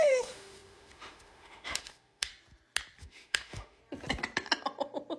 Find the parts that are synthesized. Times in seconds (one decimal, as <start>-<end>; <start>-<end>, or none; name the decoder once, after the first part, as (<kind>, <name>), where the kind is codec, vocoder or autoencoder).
0.0-2.3 (autoencoder, DAC-VAE); 3.0-3.8